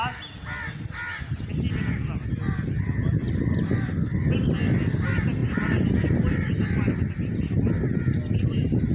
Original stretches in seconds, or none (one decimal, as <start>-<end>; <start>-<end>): 0.0-5.4; 6.5-8.9